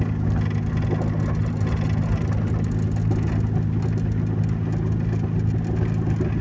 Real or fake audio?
real